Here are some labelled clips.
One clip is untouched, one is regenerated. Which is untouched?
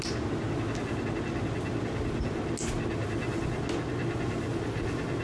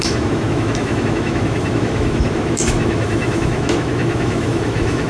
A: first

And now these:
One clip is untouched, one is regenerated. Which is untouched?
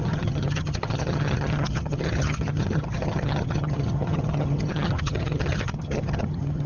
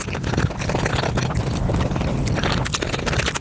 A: second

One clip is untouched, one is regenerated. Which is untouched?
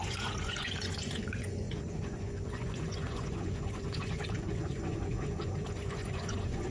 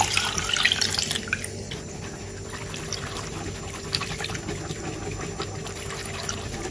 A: second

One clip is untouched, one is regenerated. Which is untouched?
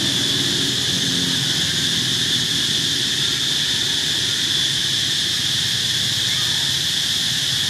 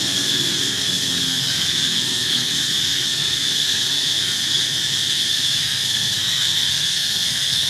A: first